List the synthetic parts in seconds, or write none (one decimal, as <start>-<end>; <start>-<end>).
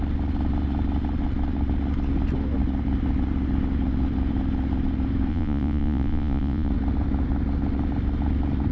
5.3-6.7